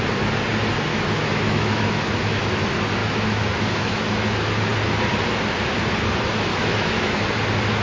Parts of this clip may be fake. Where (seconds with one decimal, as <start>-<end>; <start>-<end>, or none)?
0.9-2.4; 3.0-4.3; 6.5-7.2